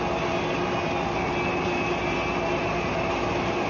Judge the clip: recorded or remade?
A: recorded